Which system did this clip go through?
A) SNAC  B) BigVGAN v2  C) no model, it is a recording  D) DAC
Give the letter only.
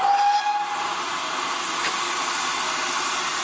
C